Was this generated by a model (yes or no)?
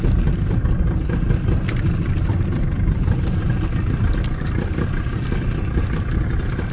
no